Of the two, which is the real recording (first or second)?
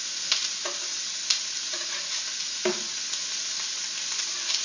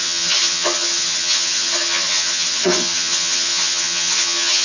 first